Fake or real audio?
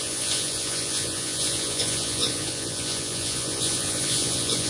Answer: fake